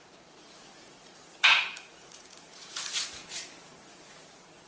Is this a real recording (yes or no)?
no